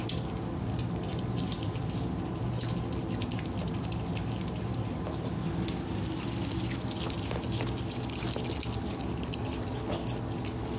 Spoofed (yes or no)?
no